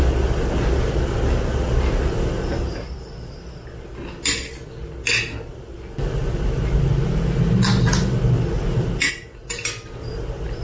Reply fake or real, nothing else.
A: real